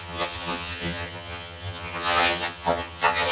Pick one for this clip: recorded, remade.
remade